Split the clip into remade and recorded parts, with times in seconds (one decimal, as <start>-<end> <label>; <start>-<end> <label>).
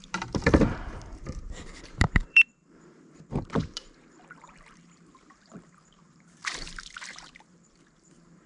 0.0-8.5 remade